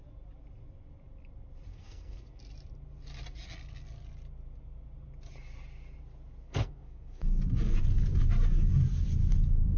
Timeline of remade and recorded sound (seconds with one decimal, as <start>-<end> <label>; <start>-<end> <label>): 0.0-1.7 recorded; 1.7-2.4 remade; 2.4-6.4 recorded; 6.4-7.4 remade; 7.4-9.8 recorded